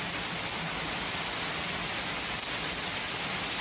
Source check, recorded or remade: recorded